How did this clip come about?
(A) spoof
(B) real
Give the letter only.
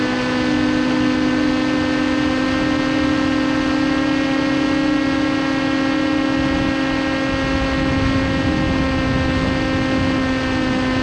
B